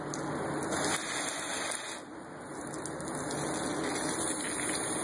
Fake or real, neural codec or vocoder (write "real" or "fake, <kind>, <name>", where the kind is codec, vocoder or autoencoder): real